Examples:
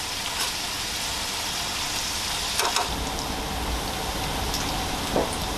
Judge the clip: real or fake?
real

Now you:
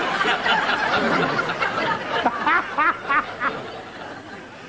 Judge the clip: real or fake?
real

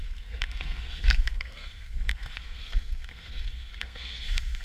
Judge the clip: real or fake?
fake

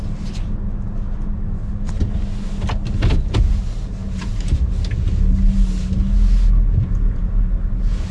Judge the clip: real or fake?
real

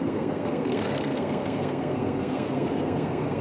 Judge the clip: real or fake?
fake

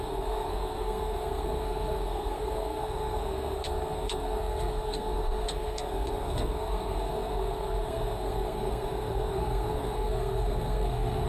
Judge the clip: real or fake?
fake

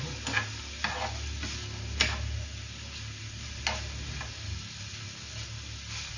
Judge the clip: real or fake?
real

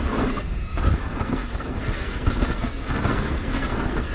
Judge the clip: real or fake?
fake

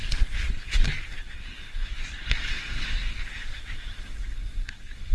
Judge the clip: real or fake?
fake